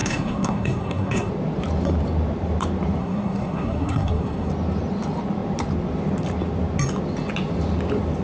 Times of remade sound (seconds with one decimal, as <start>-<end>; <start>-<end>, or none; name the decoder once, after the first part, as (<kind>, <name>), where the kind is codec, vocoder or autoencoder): 0.0-1.3 (codec, SNAC); 3.0-4.5